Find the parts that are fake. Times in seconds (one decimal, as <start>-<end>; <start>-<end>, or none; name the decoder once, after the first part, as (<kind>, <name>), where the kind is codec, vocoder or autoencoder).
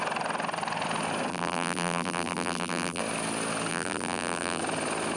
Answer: 1.3-3.0 (vocoder, BigVGAN v2); 3.7-4.6